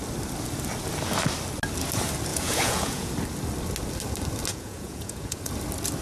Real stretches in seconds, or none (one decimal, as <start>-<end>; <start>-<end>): 0.0-2.3; 3.1-4.5; 5.5-6.0